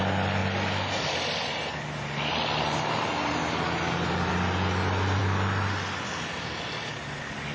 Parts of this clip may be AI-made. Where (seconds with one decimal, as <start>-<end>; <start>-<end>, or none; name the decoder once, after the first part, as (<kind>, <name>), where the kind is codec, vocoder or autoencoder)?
none